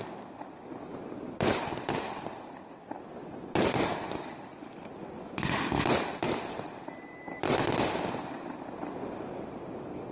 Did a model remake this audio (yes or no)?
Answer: no